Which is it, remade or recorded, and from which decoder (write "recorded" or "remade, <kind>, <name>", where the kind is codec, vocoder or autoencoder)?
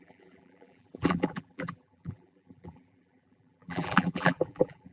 remade, vocoder, BigVGAN v2